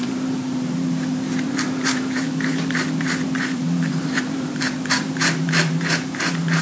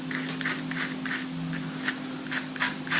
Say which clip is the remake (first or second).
first